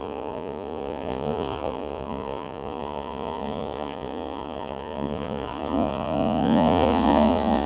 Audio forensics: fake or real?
fake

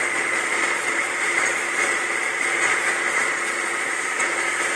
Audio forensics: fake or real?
fake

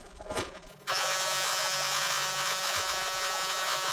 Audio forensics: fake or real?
fake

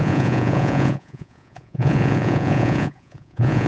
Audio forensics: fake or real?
fake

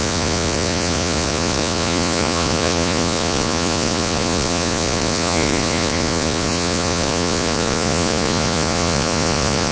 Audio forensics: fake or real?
fake